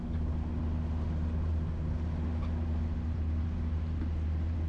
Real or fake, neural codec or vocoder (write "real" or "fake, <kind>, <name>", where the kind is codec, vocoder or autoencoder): real